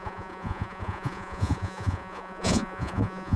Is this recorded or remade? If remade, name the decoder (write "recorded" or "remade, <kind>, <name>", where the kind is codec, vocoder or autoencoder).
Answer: remade, vocoder, Vocos